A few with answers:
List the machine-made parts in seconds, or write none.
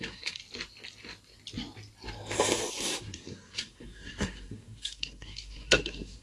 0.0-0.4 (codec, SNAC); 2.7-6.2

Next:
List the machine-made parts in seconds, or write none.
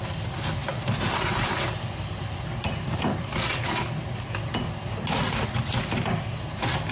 none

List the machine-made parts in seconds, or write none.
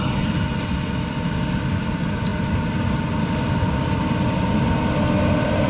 none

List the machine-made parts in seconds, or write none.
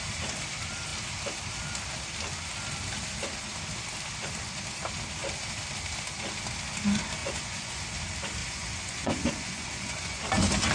7.2-7.8 (vocoder, Vocos); 8.4-10.2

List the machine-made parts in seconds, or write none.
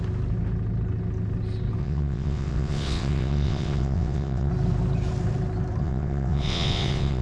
1.8-4.5 (vocoder, WaveNeXt); 5.8-7.2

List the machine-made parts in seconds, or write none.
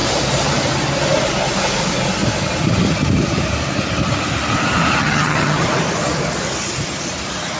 5.0-5.6 (vocoder, HiFi-GAN)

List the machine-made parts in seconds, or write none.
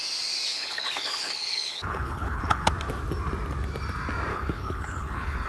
0.5-2.7 (codec, HILCodec); 4.3-5.5